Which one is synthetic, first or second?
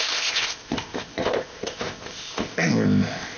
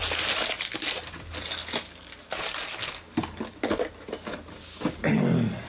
first